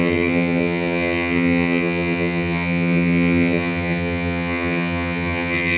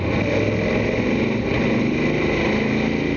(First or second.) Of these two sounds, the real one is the second